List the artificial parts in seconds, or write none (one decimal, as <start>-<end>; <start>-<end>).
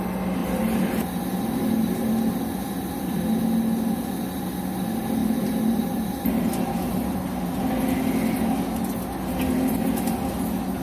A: 0.4-2.1; 5.2-7.6